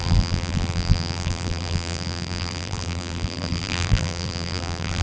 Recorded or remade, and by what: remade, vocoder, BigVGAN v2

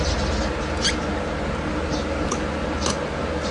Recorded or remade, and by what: recorded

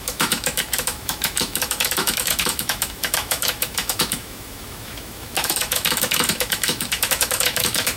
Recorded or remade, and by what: remade, autoencoder, DAC-VAE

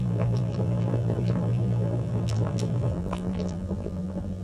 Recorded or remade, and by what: remade, vocoder, BigVGAN v2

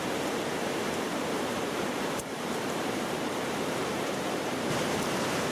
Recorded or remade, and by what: remade, vocoder, BigVGAN v2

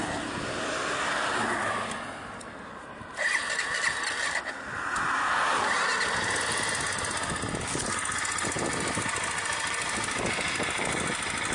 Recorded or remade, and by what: recorded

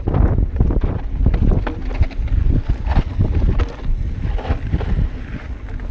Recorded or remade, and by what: recorded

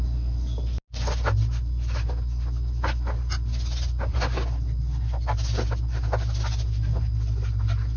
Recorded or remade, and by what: recorded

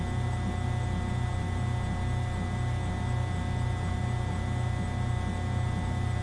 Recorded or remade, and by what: recorded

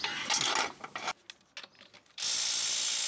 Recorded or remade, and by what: recorded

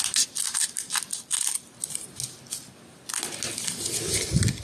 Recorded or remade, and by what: recorded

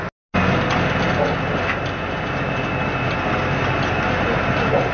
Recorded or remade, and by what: recorded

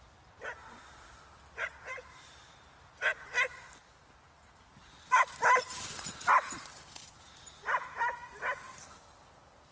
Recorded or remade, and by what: recorded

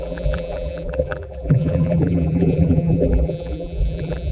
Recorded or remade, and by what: remade, vocoder, BigVGAN v2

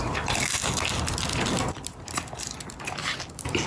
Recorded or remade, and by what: recorded